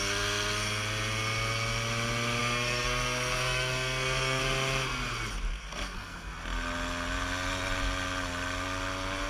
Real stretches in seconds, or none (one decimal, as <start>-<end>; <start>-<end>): 0.0-2.4; 4.4-5.5; 6.3-9.3